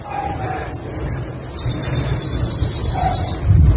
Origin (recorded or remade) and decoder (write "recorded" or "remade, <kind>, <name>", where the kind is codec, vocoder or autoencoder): recorded